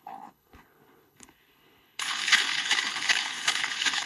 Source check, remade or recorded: remade